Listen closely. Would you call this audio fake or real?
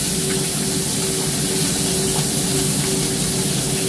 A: real